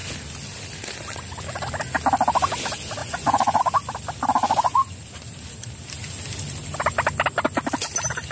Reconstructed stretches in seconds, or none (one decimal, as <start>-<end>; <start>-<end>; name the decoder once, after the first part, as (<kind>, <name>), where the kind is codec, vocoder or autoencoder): 3.0-3.6 (vocoder, Vocos); 4.4-5.0